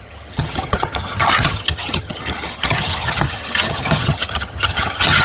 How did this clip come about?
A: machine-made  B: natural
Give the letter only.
A